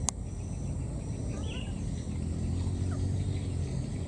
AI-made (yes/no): no